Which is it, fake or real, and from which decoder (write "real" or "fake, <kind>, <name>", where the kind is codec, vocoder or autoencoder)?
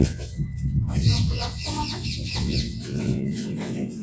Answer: fake, vocoder, WaveNeXt